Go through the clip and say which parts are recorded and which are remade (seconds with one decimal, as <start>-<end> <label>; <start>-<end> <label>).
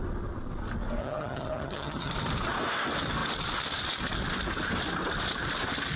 0.0-1.0 recorded; 1.0-2.1 remade; 2.1-6.0 recorded